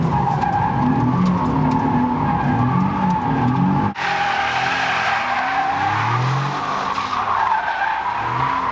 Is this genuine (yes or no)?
yes